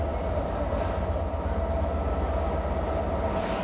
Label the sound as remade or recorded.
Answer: recorded